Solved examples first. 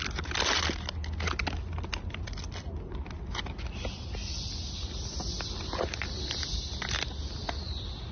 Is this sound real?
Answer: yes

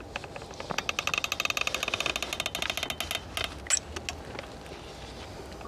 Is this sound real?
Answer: yes